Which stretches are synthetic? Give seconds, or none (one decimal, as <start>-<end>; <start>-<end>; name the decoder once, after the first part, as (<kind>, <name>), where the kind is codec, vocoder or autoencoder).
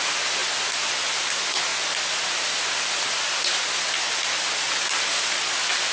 none